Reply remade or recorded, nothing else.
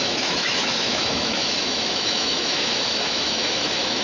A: remade